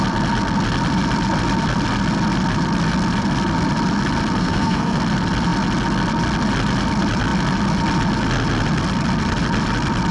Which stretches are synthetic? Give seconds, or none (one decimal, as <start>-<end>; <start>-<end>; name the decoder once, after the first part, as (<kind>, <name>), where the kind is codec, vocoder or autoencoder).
4.4-5.0 (codec, SNAC)